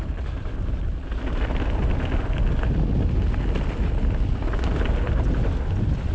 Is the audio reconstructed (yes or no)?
no